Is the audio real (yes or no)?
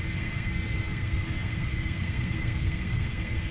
no